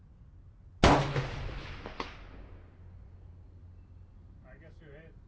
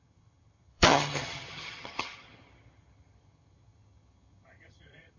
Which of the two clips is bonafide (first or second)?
first